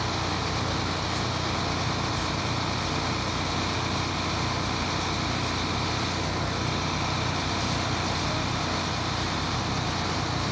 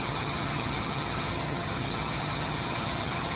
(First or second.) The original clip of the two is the first